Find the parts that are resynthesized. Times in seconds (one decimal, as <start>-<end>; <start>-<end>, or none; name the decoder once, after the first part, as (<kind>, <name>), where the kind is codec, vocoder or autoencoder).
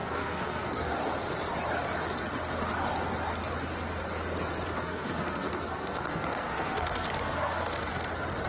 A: 0.0-0.9 (codec, SNAC); 4.8-7.9